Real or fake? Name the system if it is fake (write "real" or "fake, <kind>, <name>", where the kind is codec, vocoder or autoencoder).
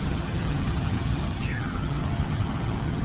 fake, vocoder, HiFi-GAN